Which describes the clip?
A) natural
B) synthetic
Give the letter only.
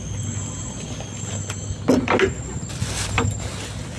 A